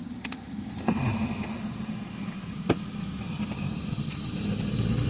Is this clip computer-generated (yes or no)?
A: no